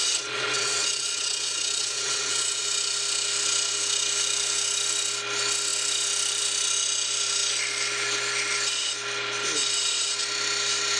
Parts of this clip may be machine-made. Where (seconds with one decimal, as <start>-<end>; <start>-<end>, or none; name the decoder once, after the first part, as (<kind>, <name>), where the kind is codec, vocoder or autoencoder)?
0.0-2.6 (vocoder, WaveNeXt)